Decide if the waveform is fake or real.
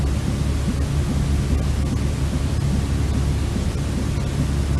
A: real